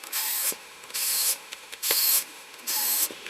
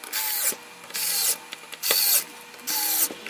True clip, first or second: second